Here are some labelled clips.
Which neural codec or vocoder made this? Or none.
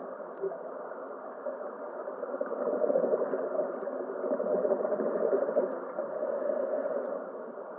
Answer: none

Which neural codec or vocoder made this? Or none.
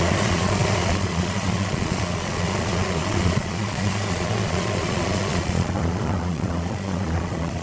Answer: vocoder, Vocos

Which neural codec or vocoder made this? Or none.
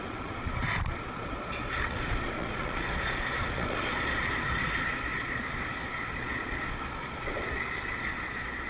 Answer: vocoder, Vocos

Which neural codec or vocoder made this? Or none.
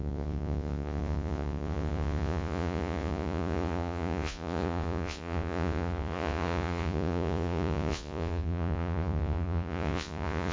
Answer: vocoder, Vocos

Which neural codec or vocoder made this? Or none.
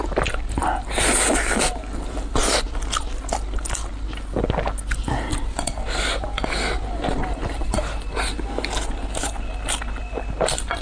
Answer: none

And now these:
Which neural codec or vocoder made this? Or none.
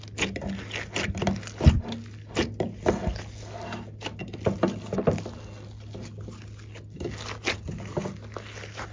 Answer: none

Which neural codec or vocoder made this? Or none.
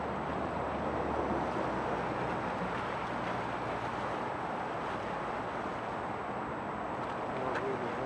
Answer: none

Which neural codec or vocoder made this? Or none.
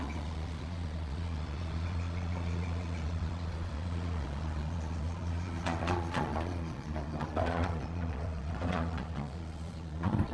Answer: vocoder, Vocos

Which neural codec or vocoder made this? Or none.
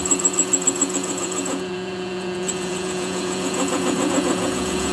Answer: vocoder, Vocos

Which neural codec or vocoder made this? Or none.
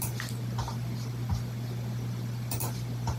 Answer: none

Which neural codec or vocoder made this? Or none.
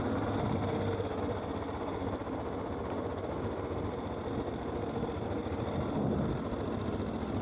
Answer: none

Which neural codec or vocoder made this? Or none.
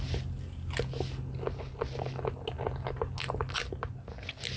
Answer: none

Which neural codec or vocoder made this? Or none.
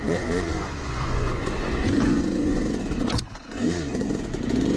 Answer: vocoder, Vocos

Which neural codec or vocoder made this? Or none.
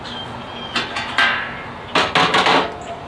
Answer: none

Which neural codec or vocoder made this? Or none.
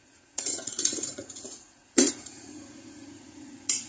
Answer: vocoder, Vocos